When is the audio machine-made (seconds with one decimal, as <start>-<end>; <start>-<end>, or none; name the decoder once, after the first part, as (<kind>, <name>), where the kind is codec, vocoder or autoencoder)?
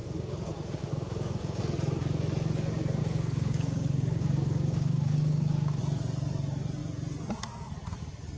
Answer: 0.0-1.6 (codec, DAC); 3.0-5.8